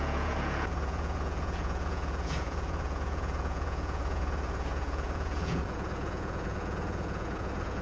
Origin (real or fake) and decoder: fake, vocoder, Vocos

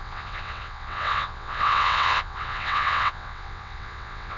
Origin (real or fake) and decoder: fake, vocoder, WaveNeXt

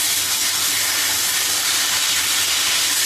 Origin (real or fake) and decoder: real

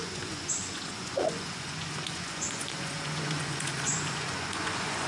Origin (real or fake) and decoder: fake, vocoder, Vocos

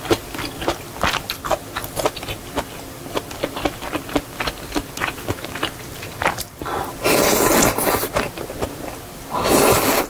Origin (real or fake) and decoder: real